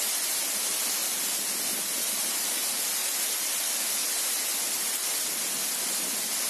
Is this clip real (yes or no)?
yes